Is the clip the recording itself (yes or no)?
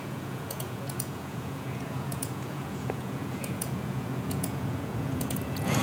no